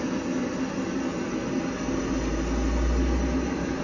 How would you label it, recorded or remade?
recorded